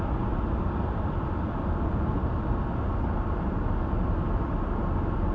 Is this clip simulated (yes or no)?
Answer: no